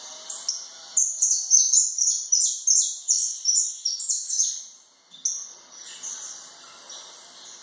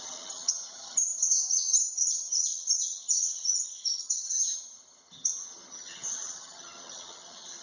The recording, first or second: first